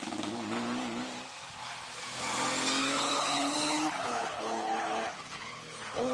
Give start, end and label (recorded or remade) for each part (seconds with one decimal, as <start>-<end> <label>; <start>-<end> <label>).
0.0-2.8 recorded; 2.8-6.1 remade